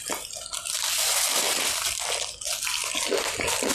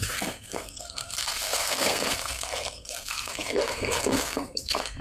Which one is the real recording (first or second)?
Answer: first